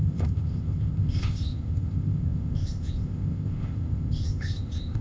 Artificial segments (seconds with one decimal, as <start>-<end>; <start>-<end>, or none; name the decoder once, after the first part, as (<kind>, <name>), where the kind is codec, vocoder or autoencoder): 0.0-5.0 (codec, ZipCodec)